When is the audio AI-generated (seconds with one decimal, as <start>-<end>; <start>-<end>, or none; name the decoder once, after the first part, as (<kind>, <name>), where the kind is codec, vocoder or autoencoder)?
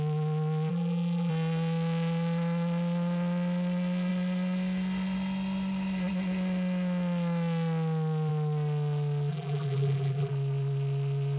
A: 0.7-1.3 (vocoder, BigVGAN v2); 9.3-10.3